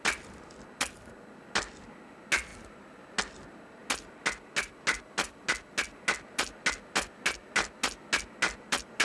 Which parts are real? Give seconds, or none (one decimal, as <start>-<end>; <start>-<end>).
0.0-9.0